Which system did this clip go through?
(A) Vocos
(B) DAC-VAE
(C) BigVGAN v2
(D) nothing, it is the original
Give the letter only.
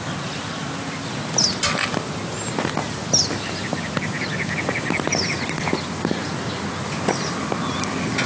D